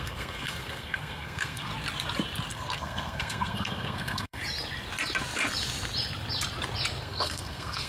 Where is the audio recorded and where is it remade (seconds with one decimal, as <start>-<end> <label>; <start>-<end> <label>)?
0.0-1.7 remade; 1.7-2.5 recorded; 2.5-4.4 remade; 4.4-7.0 recorded; 7.0-7.9 remade